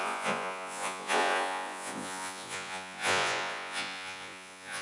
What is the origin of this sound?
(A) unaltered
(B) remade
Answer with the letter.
B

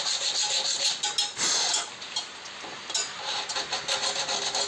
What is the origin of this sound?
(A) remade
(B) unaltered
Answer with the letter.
B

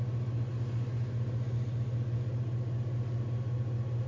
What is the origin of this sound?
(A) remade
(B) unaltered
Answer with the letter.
B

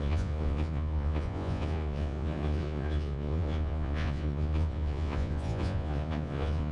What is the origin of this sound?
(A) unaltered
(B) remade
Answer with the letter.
B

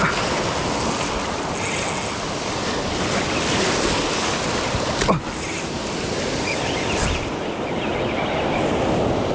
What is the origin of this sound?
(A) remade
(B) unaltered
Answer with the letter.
B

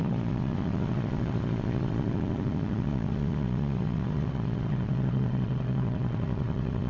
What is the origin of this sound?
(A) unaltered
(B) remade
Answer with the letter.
B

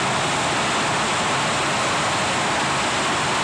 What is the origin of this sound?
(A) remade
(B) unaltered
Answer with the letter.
B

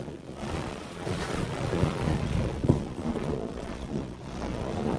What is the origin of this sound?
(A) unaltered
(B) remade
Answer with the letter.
B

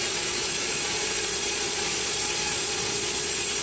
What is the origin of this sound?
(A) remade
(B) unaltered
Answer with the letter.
A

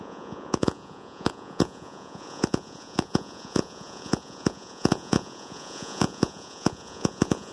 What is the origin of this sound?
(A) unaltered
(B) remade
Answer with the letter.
B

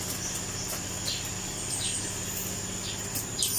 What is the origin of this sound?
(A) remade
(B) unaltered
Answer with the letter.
B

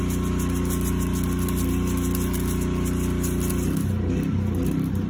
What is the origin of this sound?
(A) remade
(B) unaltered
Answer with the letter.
B